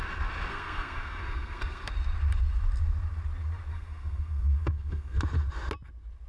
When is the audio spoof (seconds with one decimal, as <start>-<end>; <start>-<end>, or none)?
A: 0.5-1.9; 3.7-5.2